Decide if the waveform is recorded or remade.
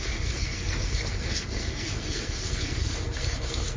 remade